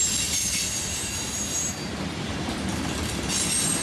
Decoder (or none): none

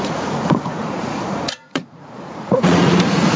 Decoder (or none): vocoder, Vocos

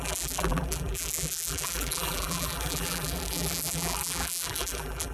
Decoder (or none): vocoder, BigVGAN v2